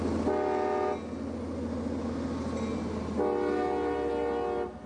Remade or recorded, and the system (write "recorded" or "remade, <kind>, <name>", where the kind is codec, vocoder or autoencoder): recorded